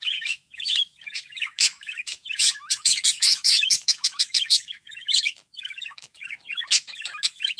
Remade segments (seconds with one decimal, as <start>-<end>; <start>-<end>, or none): 0.0-7.6